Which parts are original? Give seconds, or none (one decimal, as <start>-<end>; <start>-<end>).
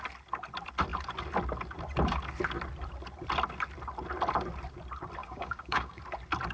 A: 0.0-5.2; 6.0-6.5